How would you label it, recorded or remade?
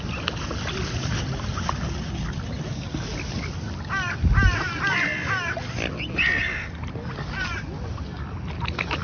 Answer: recorded